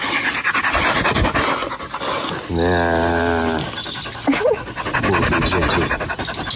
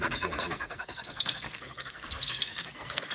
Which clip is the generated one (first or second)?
second